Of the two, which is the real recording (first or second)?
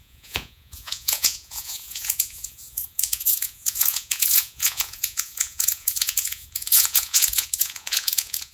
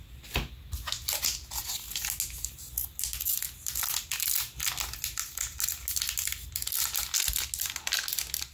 second